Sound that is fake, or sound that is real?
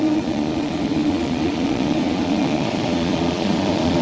fake